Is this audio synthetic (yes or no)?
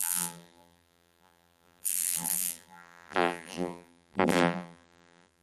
yes